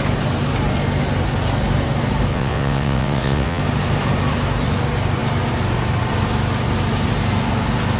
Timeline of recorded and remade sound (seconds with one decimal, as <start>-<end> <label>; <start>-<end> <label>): 0.0-2.3 recorded; 2.3-3.6 remade; 3.6-8.0 recorded